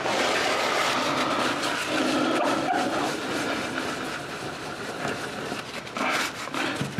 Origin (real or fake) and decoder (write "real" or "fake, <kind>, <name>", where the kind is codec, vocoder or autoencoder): real